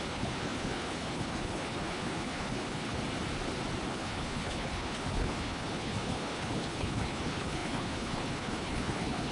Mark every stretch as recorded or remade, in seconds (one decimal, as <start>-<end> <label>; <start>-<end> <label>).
0.0-3.0 remade; 3.0-3.9 recorded; 3.9-9.3 remade